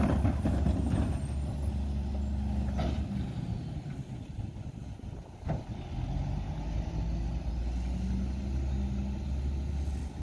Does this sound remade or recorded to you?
recorded